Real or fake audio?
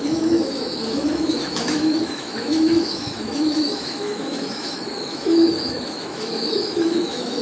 fake